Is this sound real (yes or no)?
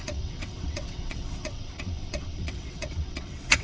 no